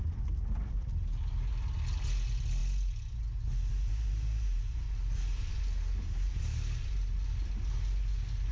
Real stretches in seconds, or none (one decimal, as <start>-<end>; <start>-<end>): 0.0-8.5